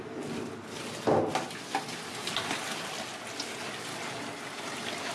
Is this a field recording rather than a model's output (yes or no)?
yes